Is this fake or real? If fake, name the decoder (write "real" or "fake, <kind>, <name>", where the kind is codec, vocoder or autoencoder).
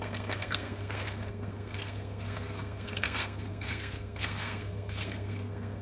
fake, codec, SNAC